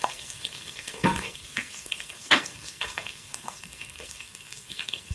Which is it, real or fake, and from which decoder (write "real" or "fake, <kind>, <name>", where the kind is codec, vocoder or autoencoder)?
fake, codec, SNAC